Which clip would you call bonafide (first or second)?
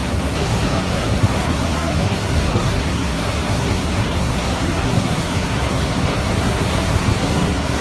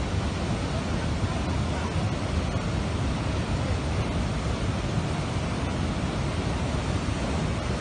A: second